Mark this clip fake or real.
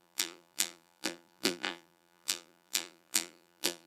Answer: fake